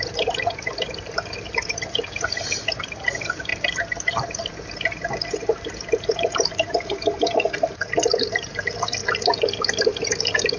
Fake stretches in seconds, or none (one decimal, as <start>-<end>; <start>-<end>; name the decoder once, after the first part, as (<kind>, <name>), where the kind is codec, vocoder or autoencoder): 0.0-9.0 (vocoder, BigVGAN v2); 9.7-10.6